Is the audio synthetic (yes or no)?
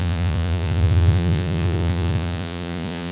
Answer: yes